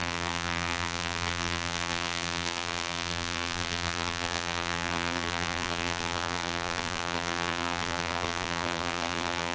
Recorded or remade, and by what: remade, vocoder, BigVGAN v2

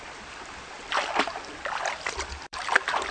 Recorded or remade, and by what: remade, vocoder, BigVGAN v2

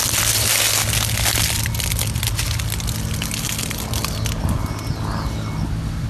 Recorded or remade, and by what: recorded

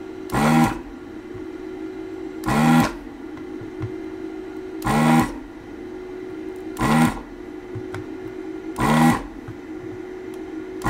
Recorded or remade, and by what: recorded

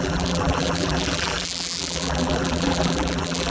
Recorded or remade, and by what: remade, vocoder, BigVGAN v2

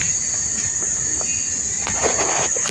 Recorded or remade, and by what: recorded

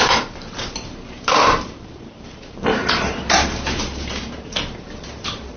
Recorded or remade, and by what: remade, vocoder, BigVGAN v2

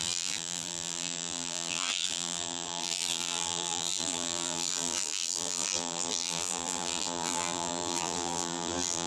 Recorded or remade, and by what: remade, vocoder, BigVGAN v2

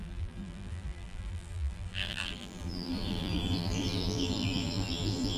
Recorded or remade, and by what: remade, vocoder, BigVGAN v2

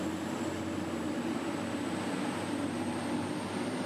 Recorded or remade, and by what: remade, vocoder, BigVGAN v2